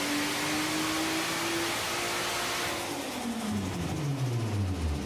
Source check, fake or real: real